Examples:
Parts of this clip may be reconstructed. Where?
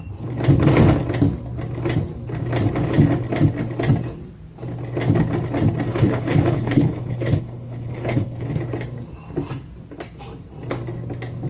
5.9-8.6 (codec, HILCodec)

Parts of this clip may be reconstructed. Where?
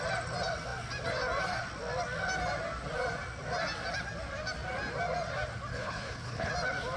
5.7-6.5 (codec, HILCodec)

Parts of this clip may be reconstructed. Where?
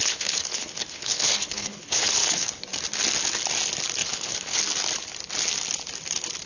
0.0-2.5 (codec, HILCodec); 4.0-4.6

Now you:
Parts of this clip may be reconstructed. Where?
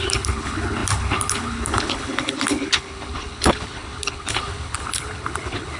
0.0-5.8 (codec, HILCodec)